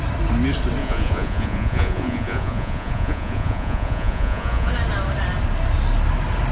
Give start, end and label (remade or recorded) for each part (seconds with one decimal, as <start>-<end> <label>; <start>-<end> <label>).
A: 0.0-0.8 recorded; 0.8-4.7 remade; 4.7-6.5 recorded